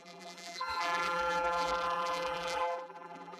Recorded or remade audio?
remade